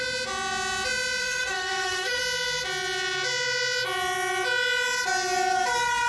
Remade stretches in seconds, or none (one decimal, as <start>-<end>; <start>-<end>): 1.2-2.2